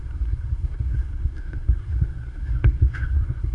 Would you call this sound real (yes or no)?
no